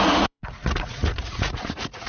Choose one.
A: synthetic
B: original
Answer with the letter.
A